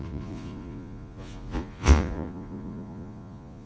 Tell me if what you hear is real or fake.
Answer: fake